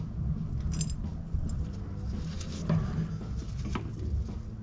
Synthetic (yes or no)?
no